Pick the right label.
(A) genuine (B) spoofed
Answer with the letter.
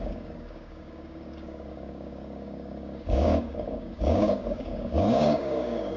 B